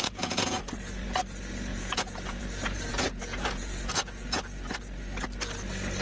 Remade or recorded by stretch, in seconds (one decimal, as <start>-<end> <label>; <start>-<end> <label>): 0.0-0.7 remade; 0.7-1.7 recorded; 1.7-2.4 remade; 2.4-2.9 recorded; 2.9-4.4 remade; 4.4-6.0 recorded